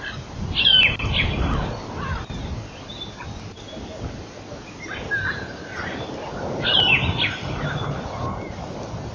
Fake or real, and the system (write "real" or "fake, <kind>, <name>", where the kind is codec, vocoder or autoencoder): real